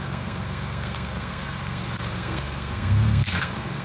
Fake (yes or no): yes